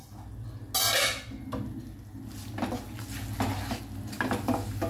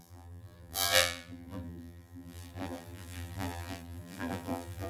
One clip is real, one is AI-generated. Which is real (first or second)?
first